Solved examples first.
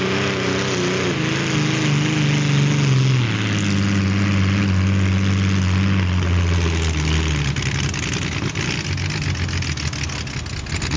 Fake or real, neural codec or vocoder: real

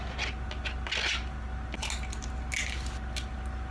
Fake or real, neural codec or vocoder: real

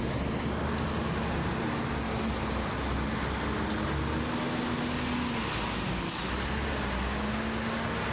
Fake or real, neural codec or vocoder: real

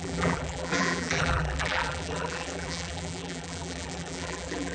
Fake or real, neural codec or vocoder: fake, vocoder, BigVGAN v2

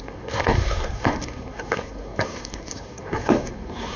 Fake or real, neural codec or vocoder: fake, codec, SNAC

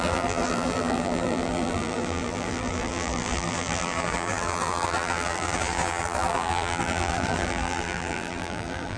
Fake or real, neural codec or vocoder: fake, vocoder, BigVGAN v2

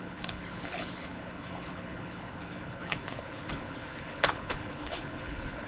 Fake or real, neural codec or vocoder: fake, codec, HILCodec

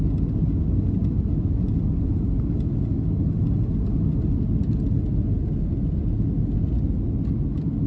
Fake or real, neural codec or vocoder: real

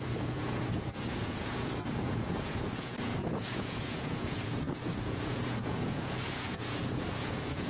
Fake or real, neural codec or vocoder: fake, vocoder, Vocos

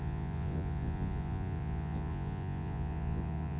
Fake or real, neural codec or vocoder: fake, vocoder, Vocos